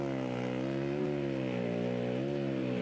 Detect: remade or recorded recorded